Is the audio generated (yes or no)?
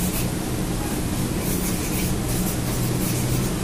no